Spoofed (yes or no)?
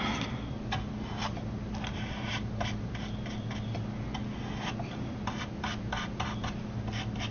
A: no